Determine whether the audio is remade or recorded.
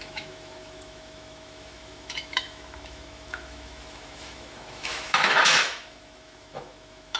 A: remade